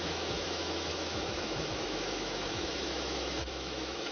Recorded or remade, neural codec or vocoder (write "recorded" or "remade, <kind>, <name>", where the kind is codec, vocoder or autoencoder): remade, autoencoder, DAC-VAE